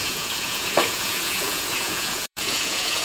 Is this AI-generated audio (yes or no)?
yes